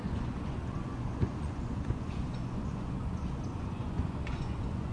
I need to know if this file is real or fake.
fake